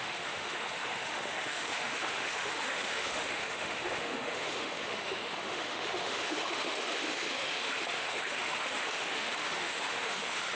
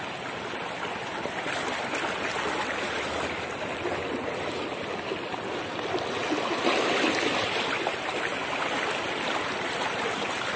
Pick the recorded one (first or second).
second